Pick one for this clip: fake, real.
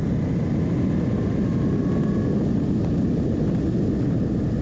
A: real